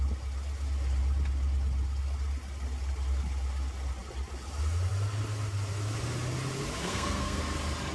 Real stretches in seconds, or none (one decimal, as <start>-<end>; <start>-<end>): 0.0-6.8; 7.4-7.9